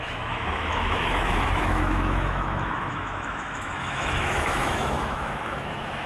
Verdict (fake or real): fake